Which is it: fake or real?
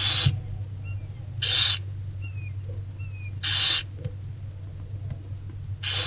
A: real